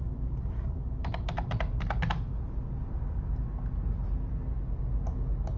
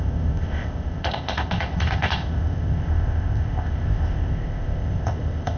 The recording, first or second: first